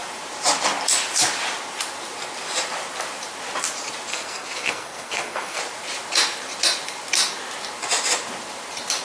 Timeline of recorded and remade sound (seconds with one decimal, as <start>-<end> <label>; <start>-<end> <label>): 0.0-4.1 recorded; 4.1-5.6 remade; 5.6-9.0 recorded